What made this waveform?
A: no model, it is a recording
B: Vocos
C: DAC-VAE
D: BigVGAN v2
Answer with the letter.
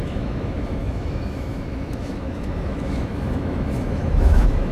C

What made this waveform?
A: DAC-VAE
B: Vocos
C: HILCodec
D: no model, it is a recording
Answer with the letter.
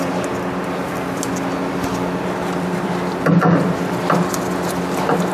D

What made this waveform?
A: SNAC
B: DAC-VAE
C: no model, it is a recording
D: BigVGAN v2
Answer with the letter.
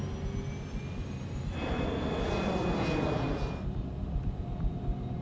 C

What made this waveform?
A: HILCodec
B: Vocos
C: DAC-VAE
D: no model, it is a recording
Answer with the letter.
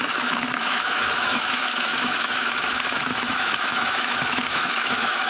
C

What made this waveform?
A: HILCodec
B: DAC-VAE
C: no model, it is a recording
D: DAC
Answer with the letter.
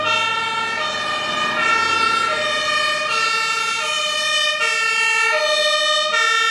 C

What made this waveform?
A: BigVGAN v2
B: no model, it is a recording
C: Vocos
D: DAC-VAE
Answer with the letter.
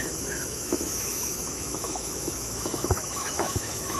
D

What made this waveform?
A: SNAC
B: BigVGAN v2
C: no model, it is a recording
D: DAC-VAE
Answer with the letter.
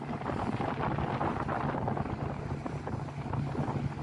C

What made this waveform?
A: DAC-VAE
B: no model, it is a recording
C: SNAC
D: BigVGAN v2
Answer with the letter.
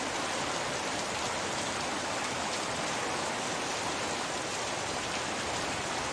B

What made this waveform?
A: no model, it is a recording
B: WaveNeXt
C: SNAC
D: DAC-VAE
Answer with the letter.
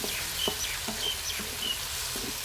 A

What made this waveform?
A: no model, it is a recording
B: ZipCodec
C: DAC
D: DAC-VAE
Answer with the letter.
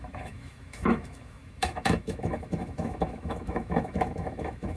D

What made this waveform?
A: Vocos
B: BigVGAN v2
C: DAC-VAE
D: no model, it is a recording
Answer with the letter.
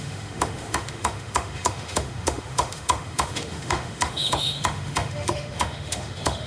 C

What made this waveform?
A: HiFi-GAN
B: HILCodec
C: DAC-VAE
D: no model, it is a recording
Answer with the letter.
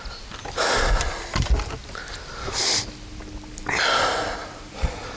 D